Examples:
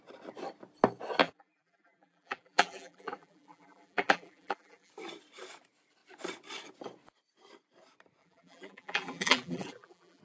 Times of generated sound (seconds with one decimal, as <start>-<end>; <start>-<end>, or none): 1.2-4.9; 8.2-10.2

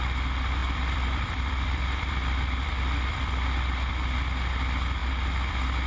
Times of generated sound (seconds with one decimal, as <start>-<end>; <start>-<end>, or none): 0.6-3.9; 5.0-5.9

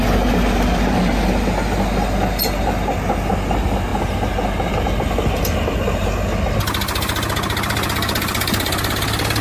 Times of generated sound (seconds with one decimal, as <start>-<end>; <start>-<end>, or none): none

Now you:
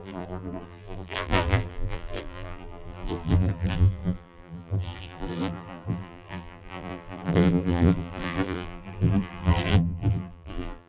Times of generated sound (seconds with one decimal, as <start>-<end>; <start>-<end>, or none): 0.0-10.9

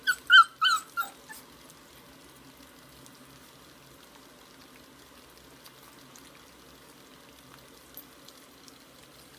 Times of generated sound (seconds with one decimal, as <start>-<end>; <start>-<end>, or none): none